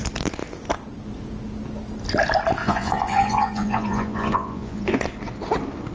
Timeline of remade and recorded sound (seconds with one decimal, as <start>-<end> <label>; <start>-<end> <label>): 0.0-2.6 recorded; 2.6-5.0 remade; 5.0-5.9 recorded